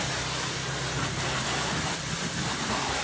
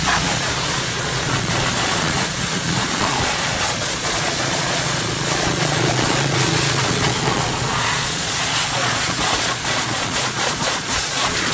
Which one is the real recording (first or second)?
first